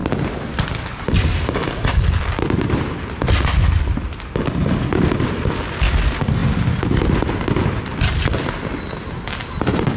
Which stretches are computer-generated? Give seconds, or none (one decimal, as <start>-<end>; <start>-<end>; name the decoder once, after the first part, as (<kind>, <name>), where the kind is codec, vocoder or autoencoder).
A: none